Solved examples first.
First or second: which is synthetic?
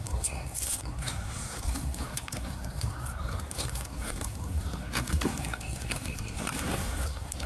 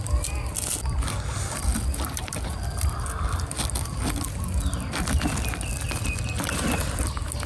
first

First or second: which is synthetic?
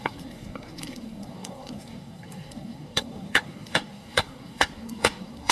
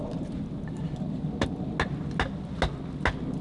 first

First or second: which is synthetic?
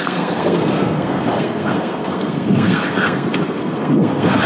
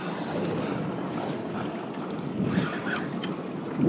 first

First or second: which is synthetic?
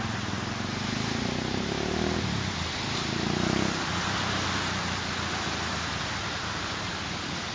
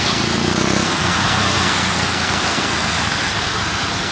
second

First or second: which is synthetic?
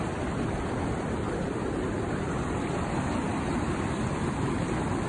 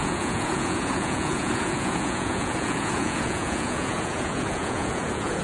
second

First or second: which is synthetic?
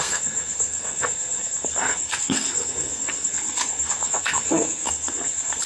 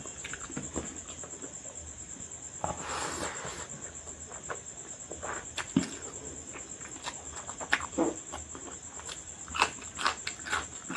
first